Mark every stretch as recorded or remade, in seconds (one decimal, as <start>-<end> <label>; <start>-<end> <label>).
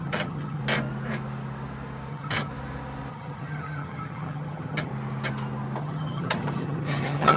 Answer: 0.0-0.6 remade; 0.6-2.1 recorded; 2.1-2.5 remade; 2.5-3.1 recorded; 3.1-4.9 remade; 4.9-5.8 recorded; 5.8-7.4 remade